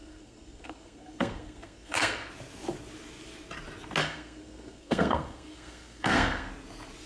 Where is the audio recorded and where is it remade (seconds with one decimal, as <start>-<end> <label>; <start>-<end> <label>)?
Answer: 0.0-2.3 remade; 2.3-4.0 recorded; 4.0-6.5 remade; 6.5-7.1 recorded